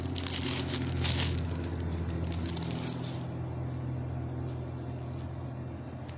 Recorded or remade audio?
recorded